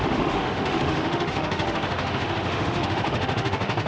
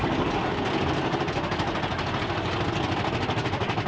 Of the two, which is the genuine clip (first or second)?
second